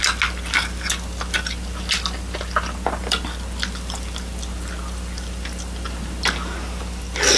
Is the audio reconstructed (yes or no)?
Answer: no